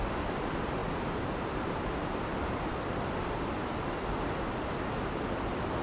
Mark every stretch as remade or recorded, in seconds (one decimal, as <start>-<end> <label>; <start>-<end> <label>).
0.0-0.8 recorded; 0.8-1.8 remade; 1.8-5.8 recorded